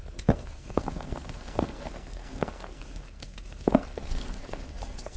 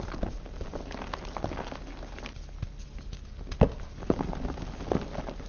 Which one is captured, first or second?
second